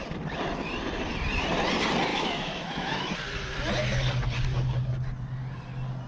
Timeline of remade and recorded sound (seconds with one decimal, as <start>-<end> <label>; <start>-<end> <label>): 0.0-2.1 recorded; 2.1-3.1 remade; 3.1-6.1 recorded